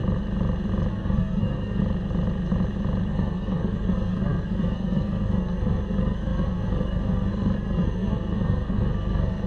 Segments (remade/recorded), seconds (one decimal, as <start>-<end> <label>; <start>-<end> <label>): 0.0-0.9 recorded; 0.9-1.8 remade; 1.8-3.1 recorded; 3.1-9.5 remade